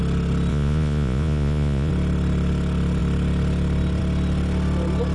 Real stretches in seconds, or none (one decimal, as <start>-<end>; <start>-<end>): 0.0-0.5; 1.9-5.1